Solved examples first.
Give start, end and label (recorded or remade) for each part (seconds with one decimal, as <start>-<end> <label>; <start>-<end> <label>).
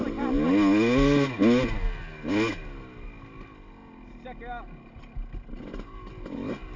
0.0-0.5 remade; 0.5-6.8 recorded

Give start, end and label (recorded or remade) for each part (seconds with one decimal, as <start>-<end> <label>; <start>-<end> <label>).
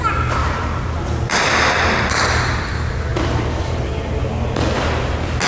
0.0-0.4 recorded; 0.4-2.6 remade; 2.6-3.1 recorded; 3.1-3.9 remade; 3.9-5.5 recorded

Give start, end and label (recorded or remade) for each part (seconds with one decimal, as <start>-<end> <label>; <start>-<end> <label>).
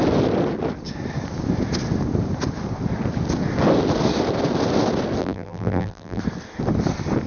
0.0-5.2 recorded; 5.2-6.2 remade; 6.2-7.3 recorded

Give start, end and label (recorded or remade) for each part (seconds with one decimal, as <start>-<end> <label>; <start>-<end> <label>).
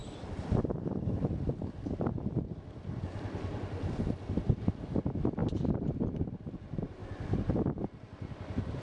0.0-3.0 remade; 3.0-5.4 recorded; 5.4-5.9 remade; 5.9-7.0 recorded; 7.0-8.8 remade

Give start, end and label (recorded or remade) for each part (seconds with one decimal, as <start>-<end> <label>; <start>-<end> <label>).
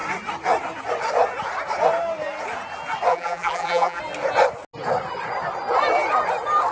0.0-3.1 recorded; 3.1-4.0 remade; 4.0-6.7 recorded